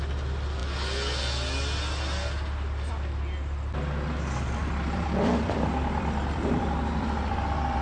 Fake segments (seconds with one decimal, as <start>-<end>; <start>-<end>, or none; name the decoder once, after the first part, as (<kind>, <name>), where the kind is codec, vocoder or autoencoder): 4.6-7.8 (vocoder, BigVGAN v2)